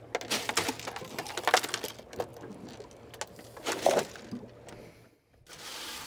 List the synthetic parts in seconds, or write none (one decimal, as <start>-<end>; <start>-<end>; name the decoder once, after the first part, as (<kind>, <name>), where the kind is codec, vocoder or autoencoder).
none